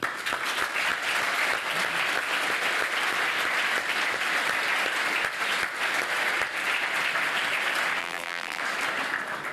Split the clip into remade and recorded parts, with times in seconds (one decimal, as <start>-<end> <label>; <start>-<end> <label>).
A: 0.0-8.0 recorded; 8.0-8.6 remade; 8.6-9.5 recorded